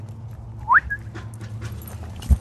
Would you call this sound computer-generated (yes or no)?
no